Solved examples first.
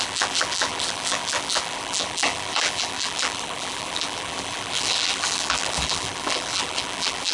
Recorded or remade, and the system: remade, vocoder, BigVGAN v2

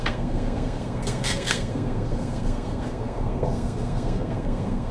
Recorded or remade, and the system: remade, codec, SNAC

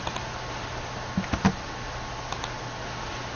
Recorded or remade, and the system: recorded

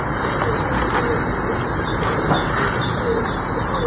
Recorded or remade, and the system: recorded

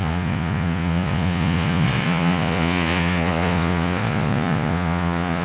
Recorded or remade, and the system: remade, vocoder, Vocos